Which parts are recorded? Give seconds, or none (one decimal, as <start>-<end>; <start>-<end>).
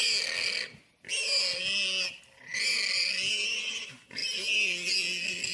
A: 0.0-5.5